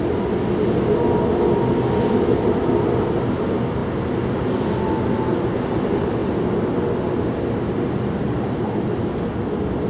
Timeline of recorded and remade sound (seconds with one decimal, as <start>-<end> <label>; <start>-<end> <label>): 0.0-9.9 recorded